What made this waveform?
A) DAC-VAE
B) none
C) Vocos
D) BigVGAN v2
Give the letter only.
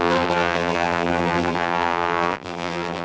D